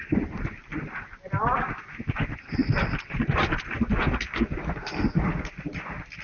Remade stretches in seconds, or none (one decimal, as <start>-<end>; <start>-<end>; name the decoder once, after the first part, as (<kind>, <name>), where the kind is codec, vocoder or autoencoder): none